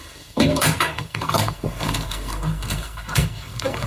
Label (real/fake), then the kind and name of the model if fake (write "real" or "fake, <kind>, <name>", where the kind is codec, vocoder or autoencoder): fake, codec, SNAC